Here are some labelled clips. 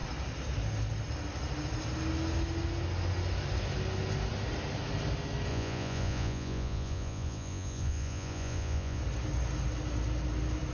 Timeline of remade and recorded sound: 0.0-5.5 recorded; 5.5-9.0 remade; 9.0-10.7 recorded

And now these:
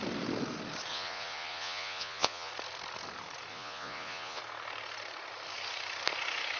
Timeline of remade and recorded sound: 0.0-0.9 recorded; 0.9-2.5 remade; 2.5-3.5 recorded; 3.5-4.4 remade; 4.4-6.6 recorded

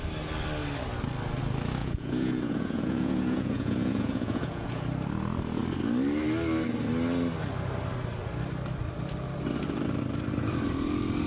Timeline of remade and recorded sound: 0.0-1.8 recorded; 1.8-4.8 remade; 4.8-11.3 recorded

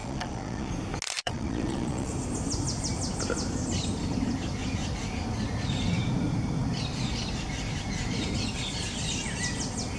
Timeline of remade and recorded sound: 0.0-0.7 remade; 0.7-1.2 recorded; 1.2-2.1 remade; 2.1-10.0 recorded